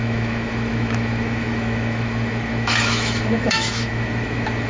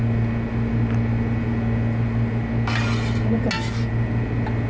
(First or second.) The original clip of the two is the second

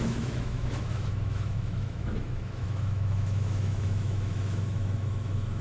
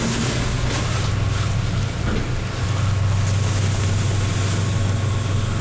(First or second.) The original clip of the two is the second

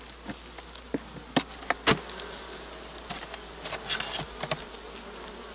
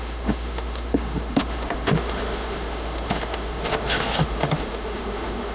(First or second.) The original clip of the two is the first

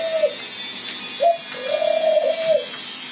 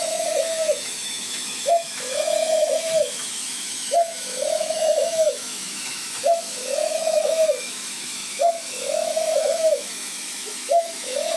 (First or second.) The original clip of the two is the first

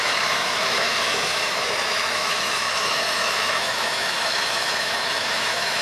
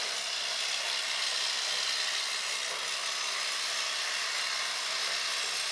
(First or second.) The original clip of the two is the second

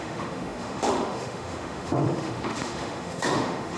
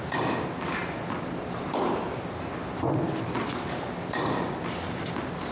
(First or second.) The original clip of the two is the second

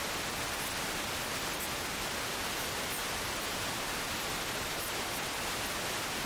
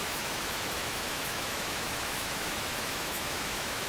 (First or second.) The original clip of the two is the first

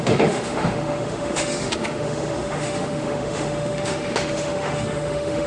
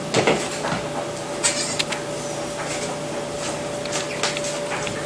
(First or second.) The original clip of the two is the second